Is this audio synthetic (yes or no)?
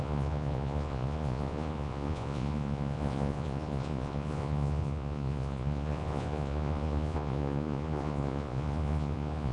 yes